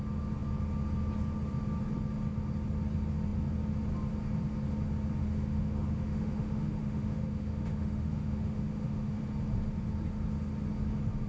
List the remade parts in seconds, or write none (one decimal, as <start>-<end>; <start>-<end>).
5.2-9.2